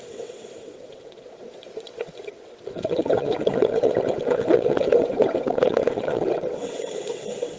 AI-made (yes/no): yes